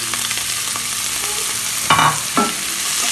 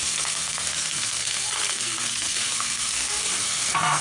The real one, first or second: first